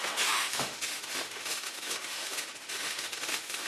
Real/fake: fake